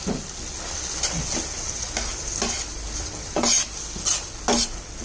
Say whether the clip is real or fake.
real